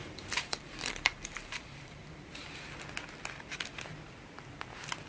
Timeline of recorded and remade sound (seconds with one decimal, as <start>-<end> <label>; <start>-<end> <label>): 0.0-2.7 remade; 2.7-5.1 recorded